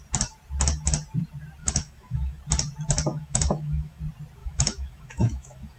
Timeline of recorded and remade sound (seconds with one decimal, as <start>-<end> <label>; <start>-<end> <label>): 0.0-1.6 recorded; 1.6-2.4 remade; 2.4-3.1 recorded; 3.1-4.0 remade; 4.0-4.4 recorded; 4.4-5.8 remade